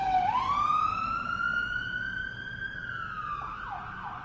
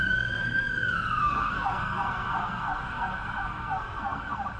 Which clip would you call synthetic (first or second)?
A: second